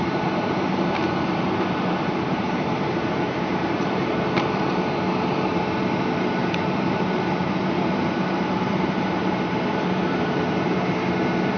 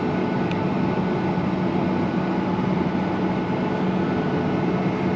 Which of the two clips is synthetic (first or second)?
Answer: first